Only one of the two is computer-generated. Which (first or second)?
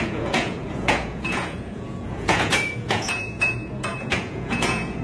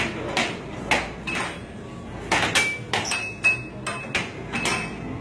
first